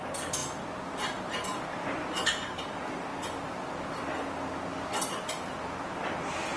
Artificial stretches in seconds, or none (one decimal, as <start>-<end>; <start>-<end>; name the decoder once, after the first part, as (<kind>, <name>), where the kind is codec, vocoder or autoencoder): none